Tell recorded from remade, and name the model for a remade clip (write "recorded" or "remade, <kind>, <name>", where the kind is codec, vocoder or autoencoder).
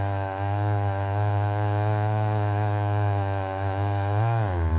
remade, codec, DAC